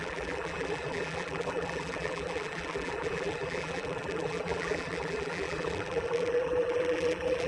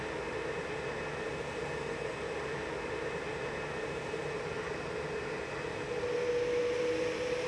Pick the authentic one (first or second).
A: second